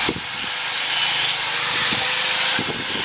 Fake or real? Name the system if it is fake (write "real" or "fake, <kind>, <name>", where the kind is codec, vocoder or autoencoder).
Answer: real